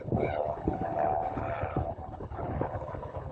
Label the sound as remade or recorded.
remade